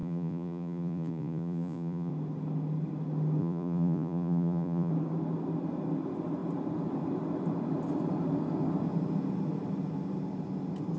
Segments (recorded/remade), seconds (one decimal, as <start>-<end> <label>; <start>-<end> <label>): 0.0-2.1 remade; 2.1-3.4 recorded; 3.4-4.9 remade; 4.9-11.0 recorded